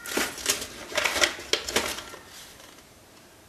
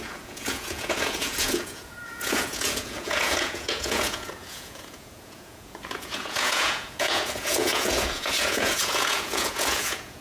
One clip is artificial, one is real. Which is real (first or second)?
first